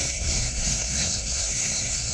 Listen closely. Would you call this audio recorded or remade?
remade